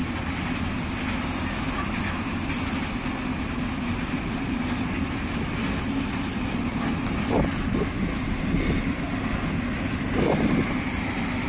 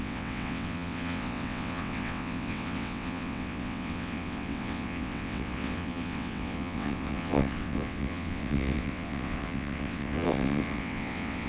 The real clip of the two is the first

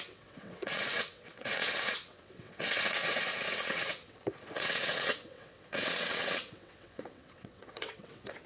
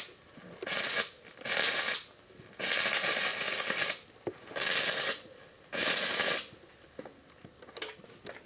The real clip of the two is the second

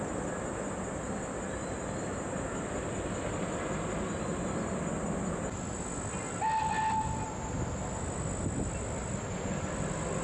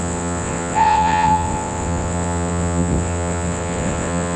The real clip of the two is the first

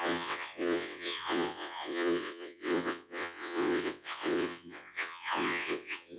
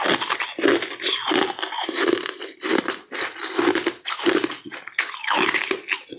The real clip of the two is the second